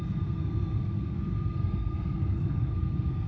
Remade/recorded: remade